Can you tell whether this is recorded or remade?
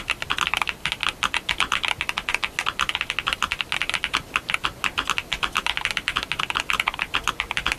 recorded